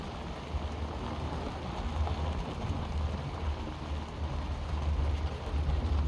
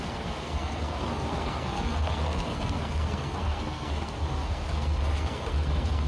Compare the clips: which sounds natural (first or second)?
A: first